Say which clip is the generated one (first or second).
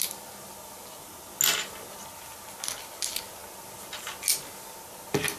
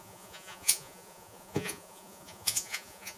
second